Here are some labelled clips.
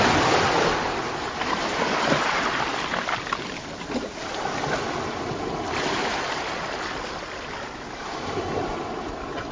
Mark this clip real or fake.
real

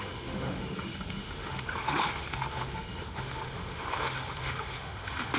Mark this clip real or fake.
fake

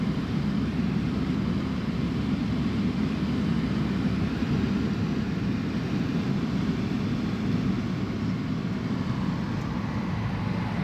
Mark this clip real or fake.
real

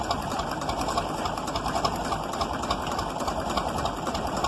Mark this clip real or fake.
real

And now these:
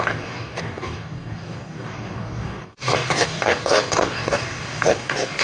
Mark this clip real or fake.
fake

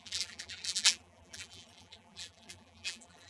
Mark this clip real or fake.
fake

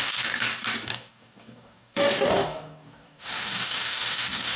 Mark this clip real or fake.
fake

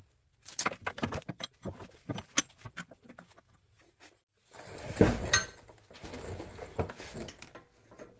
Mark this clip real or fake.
real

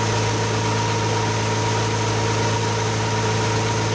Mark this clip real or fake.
real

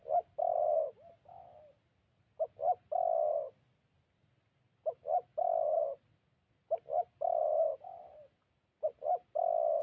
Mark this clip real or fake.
real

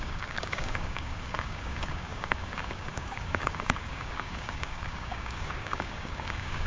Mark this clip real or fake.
fake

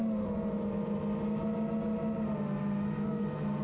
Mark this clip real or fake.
real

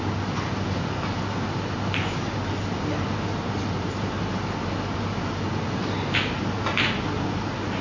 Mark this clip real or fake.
real